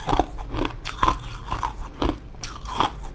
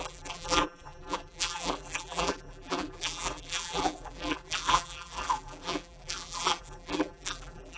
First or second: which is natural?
first